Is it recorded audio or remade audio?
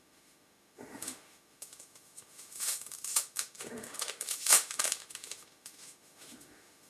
remade